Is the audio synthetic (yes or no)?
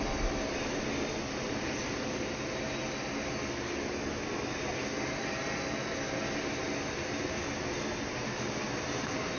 no